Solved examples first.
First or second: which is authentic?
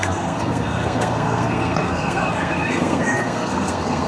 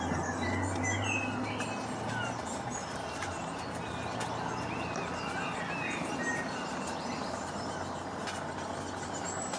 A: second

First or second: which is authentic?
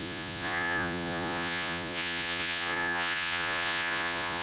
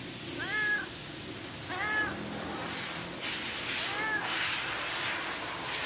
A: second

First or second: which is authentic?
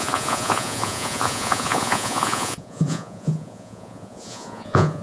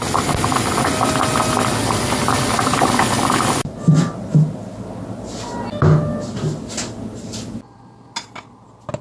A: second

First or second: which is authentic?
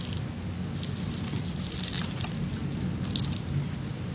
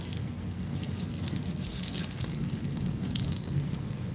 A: first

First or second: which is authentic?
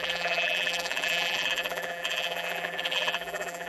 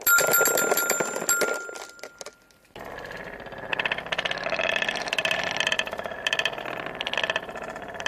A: second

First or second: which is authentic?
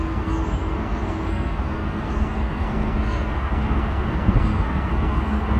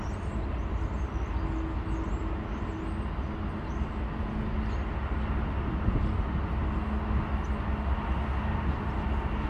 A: second